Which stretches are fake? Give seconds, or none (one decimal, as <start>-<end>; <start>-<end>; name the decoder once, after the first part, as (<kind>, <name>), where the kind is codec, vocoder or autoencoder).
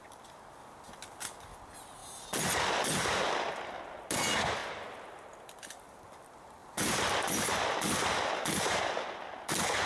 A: 6.6-7.6 (vocoder, BigVGAN v2)